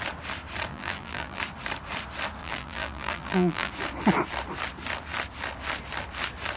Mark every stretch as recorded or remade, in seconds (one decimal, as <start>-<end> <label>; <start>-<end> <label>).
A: 0.0-0.7 recorded; 0.7-1.4 remade; 1.4-2.4 recorded; 2.4-3.7 remade; 3.7-6.6 recorded